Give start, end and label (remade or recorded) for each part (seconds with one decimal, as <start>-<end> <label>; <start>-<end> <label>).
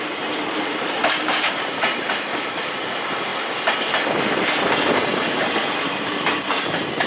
0.0-1.0 remade; 1.0-2.1 recorded; 2.1-3.3 remade; 3.3-6.0 recorded; 6.0-7.1 remade